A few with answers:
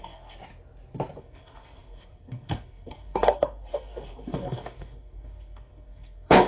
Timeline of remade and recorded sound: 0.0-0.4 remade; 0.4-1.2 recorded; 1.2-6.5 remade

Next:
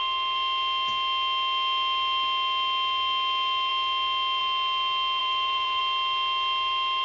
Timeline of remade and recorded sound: 0.0-5.2 recorded; 5.2-5.8 remade; 5.8-7.0 recorded

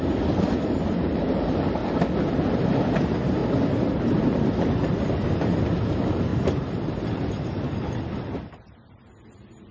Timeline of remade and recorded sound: 0.0-1.8 remade; 1.8-2.3 recorded; 2.3-3.4 remade; 3.4-4.2 recorded; 4.2-9.7 remade

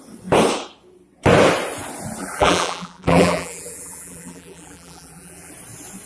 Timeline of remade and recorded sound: 0.0-2.2 recorded; 2.2-5.5 remade; 5.5-6.1 recorded

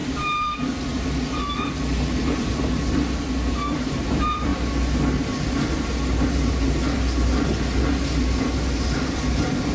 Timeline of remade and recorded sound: 0.0-4.5 remade; 4.5-8.4 recorded; 8.4-9.7 remade

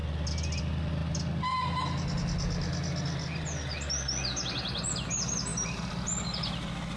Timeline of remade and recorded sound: 0.0-7.0 recorded

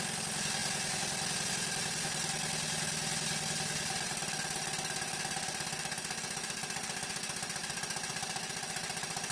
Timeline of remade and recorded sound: 0.0-9.3 recorded

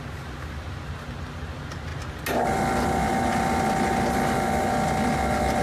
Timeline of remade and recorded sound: 0.0-5.6 recorded